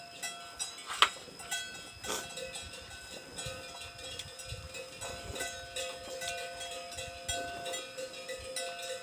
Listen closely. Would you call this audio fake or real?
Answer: real